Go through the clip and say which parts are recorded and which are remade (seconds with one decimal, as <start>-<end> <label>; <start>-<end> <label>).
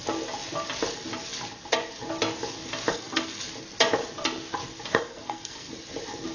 0.0-2.9 recorded; 2.9-3.4 remade; 3.4-4.9 recorded; 4.9-5.7 remade; 5.7-6.3 recorded